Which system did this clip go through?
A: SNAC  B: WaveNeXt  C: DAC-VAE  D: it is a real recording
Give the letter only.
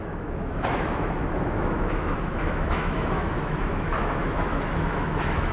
C